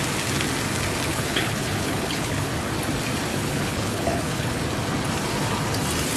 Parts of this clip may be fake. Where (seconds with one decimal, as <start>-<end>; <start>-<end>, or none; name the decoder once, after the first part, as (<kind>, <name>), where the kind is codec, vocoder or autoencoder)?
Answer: 1.1-2.5 (codec, HILCodec); 3.3-4.6